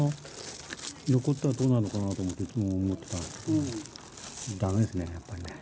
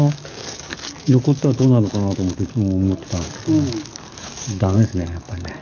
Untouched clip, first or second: first